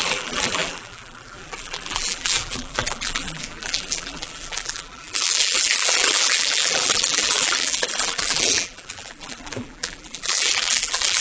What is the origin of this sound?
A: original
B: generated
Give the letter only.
B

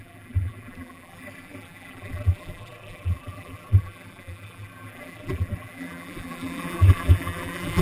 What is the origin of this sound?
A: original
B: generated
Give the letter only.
B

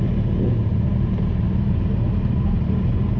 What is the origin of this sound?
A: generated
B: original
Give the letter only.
A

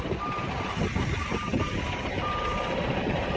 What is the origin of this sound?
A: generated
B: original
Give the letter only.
A